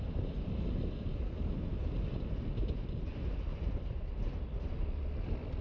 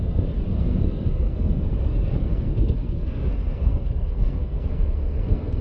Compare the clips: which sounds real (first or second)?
first